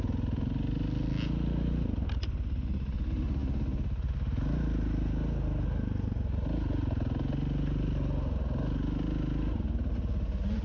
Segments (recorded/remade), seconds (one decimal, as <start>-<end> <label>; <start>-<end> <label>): 0.0-10.6 recorded